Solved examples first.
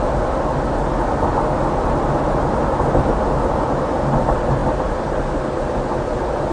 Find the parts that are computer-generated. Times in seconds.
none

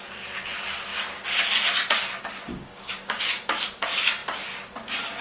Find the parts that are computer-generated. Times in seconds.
2.5-3.2 (codec, DAC)

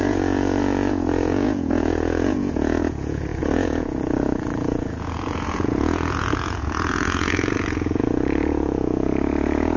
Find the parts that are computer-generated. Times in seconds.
0.0-9.8 (vocoder, Vocos)

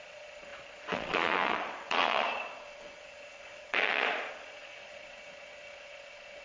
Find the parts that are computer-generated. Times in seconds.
0.0-6.4 (vocoder, Vocos)

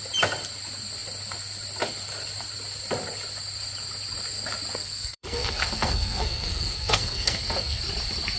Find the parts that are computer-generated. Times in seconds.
4.8-7.8 (codec, SNAC)

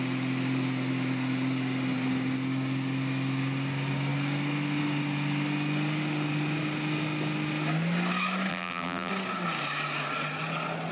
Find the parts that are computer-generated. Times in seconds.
8.5-9.1 (vocoder, BigVGAN v2)

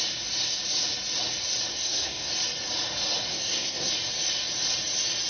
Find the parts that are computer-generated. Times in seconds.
1.7-2.3 (codec, SNAC); 3.3-3.9